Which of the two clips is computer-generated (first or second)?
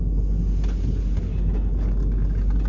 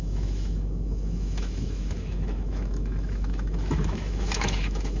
second